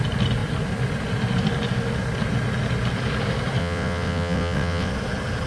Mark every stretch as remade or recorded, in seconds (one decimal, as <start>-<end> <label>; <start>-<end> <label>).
0.0-3.6 recorded; 3.6-4.9 remade; 4.9-5.5 recorded